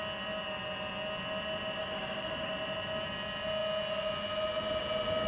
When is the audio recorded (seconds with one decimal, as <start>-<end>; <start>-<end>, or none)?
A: 0.0-1.8; 2.5-5.3